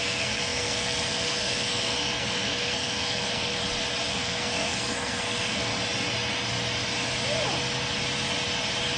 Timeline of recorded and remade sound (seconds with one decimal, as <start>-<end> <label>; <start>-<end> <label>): 0.0-3.6 remade; 3.6-4.1 recorded; 4.1-5.7 remade; 5.7-9.0 recorded